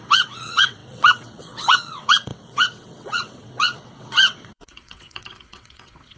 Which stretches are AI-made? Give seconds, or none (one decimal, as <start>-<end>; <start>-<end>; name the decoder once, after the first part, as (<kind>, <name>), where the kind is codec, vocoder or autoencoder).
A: 0.0-6.2 (vocoder, WaveNeXt)